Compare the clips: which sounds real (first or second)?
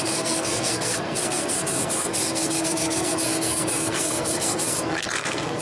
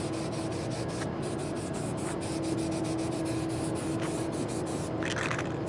second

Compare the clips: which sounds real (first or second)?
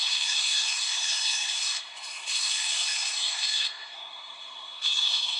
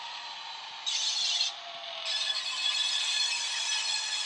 second